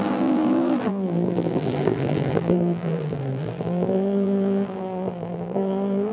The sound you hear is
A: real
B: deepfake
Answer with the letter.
B